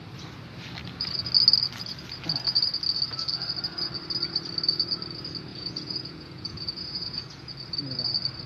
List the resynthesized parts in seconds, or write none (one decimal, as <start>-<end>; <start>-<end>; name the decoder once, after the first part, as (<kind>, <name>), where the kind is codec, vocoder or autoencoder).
5.5-7.5 (vocoder, Vocos)